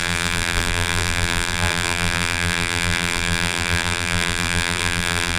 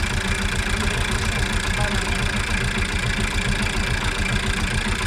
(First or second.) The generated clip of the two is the first